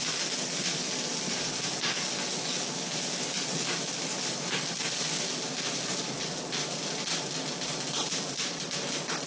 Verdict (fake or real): real